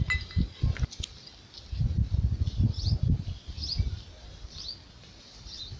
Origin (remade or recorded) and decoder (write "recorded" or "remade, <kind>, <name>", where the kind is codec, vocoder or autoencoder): recorded